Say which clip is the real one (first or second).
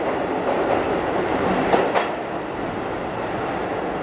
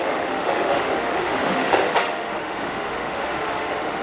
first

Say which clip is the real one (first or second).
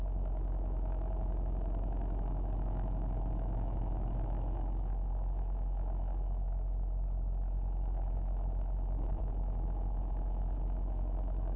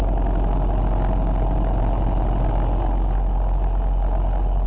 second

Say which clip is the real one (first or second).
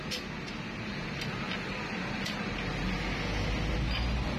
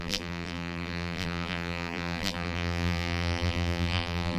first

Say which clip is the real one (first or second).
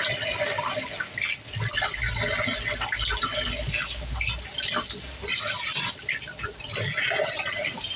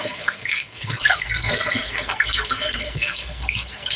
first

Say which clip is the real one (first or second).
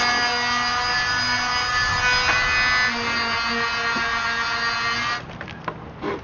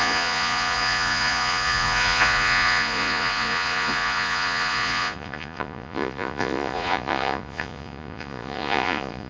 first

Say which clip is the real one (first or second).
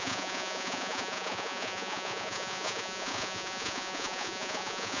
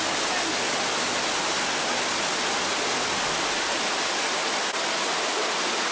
second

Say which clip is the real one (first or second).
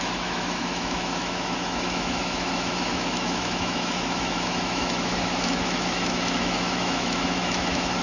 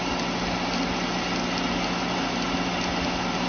second